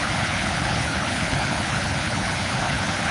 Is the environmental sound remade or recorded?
remade